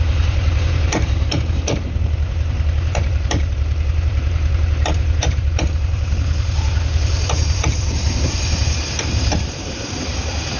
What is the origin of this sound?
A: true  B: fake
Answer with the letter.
B